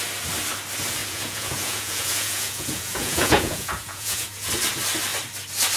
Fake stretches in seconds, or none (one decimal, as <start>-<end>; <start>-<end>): 1.0-4.5